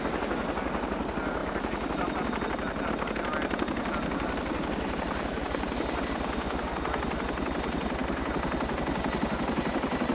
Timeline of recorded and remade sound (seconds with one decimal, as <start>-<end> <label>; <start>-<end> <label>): 0.0-10.1 recorded